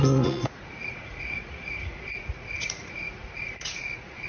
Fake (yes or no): yes